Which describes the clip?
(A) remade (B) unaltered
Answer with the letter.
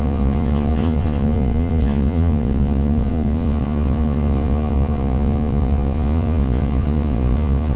A